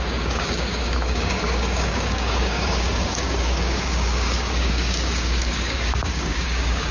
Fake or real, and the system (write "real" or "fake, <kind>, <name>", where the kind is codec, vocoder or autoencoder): fake, codec, DAC